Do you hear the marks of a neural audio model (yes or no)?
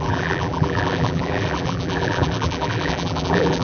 yes